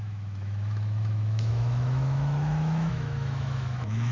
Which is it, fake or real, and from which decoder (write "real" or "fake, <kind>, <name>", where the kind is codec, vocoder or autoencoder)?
fake, autoencoder, DAC-VAE